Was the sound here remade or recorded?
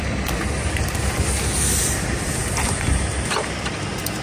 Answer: recorded